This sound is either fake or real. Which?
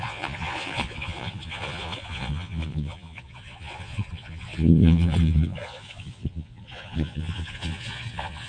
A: fake